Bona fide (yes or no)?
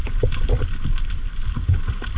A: no